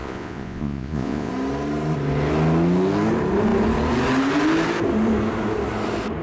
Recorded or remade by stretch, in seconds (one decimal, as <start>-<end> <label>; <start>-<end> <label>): 0.0-1.3 remade; 1.3-6.2 recorded